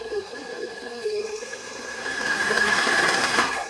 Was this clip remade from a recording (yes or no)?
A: yes